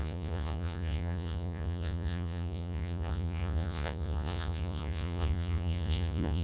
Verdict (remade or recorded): remade